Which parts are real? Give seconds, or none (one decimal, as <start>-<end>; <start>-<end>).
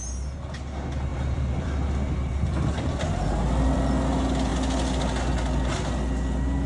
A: 0.0-1.1; 3.8-6.7